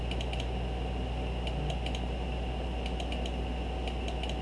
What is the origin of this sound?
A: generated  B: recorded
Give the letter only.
B